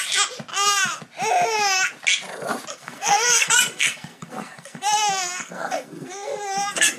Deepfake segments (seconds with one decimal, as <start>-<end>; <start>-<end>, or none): 0.5-1.0; 2.7-7.0